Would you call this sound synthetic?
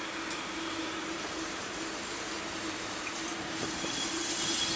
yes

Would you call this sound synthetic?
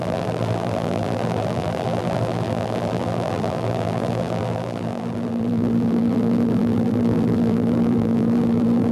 yes